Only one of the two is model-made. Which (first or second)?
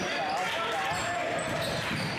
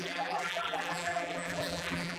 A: second